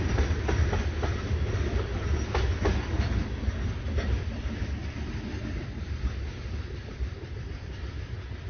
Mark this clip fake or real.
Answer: fake